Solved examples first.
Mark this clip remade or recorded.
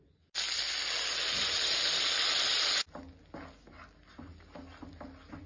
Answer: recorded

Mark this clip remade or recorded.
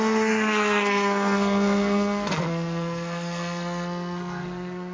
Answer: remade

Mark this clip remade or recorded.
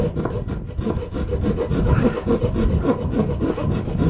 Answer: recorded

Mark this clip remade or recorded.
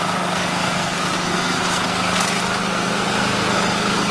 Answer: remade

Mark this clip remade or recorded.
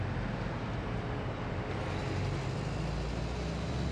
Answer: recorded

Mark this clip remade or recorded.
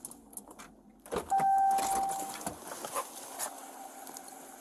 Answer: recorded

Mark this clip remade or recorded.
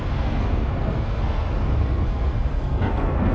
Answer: remade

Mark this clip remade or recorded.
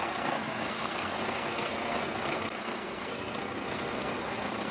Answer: remade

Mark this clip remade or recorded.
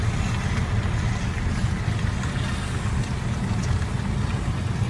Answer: recorded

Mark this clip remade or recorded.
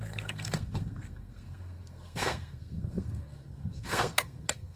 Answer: remade